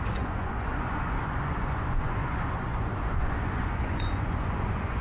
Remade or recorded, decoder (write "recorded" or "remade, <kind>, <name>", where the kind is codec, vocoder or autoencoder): remade, vocoder, Vocos